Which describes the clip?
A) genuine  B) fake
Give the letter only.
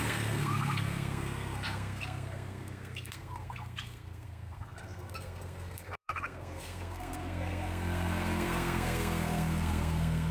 B